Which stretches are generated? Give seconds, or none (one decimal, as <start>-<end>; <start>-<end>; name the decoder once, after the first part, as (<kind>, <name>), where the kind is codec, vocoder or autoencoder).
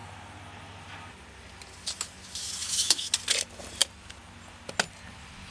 2.6-3.1 (autoencoder, DAC-VAE)